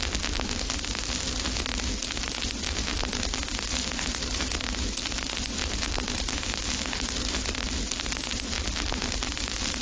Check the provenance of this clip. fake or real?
real